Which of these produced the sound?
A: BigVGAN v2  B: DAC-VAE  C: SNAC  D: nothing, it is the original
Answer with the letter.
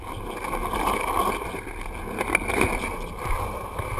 D